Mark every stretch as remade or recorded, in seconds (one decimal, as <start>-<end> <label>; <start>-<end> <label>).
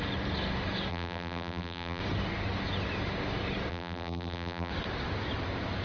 0.0-0.9 recorded; 0.9-2.0 remade; 2.0-3.7 recorded; 3.7-4.7 remade; 4.7-5.8 recorded